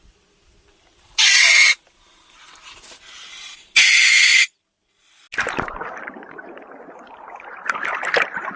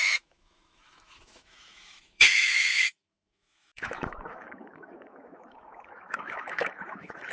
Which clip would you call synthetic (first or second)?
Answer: second